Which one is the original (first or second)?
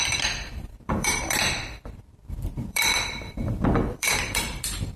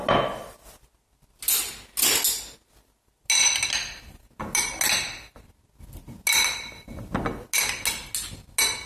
second